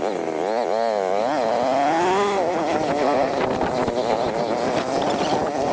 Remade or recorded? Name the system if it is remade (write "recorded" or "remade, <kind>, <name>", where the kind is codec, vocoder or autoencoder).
recorded